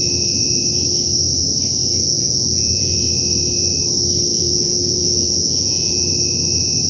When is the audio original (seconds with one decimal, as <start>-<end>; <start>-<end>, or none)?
0.0-1.8; 3.0-4.3; 6.1-6.9